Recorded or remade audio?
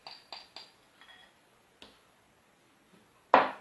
recorded